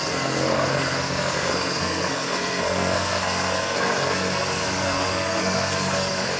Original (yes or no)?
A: no